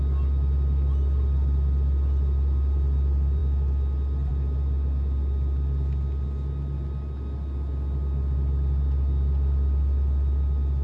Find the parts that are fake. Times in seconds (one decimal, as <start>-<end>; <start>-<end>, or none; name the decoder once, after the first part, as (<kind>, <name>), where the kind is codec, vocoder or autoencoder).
none